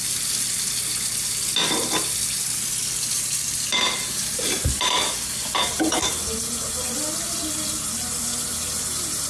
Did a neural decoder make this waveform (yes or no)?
no